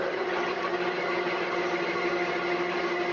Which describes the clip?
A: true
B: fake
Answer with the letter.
A